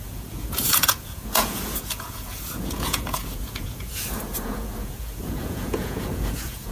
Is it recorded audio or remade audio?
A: remade